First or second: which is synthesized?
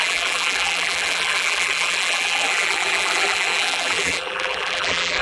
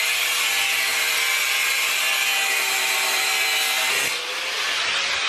first